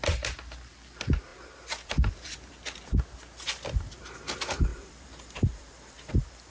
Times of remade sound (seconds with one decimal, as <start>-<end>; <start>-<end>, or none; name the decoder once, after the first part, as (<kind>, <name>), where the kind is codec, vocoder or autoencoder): 1.3-2.8 (vocoder, BigVGAN v2); 4.7-6.1